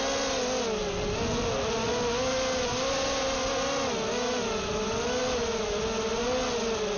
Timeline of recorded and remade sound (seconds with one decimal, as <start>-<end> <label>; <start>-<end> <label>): 0.0-7.0 recorded